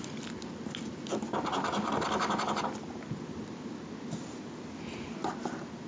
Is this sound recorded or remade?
recorded